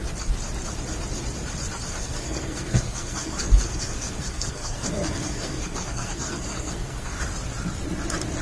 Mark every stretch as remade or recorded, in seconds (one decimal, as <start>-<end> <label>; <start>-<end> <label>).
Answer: 0.0-1.9 recorded; 1.9-7.2 remade; 7.2-8.4 recorded